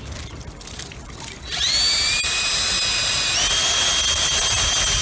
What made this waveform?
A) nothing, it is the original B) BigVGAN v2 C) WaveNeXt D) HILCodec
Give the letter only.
A